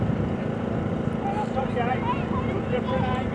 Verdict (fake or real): fake